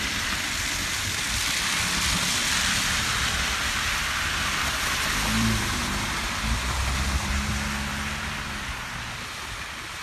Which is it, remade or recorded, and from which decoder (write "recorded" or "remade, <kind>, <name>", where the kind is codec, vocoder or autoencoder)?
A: recorded